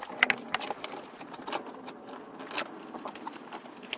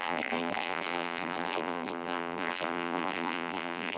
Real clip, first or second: first